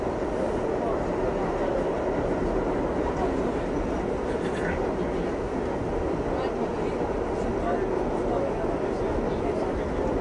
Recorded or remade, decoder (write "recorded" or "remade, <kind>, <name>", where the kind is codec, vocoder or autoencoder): recorded